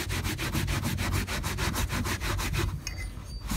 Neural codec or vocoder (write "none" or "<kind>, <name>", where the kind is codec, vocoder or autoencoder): none